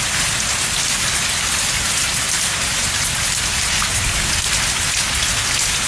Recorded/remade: recorded